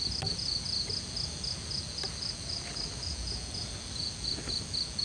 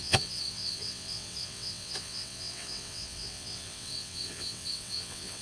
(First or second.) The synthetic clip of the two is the second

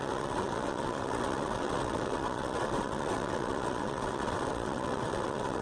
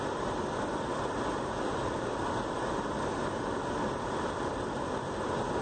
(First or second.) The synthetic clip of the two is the first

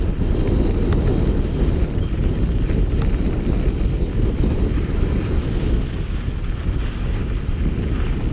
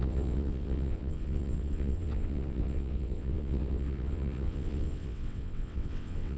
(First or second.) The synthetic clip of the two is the second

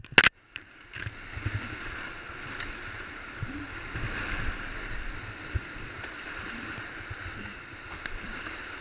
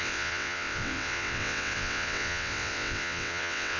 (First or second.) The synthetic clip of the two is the second